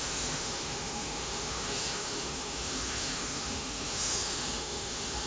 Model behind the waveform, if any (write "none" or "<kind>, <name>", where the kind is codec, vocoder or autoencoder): autoencoder, DAC-VAE